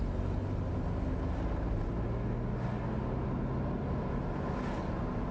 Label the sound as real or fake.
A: real